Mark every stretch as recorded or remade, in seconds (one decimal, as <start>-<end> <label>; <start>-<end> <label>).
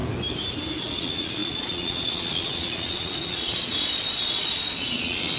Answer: 0.0-0.8 recorded; 0.8-5.4 remade